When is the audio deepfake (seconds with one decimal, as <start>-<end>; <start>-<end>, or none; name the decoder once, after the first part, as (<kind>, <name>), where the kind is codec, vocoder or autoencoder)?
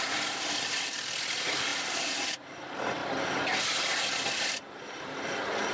0.0-3.0 (vocoder, BigVGAN v2); 3.5-5.7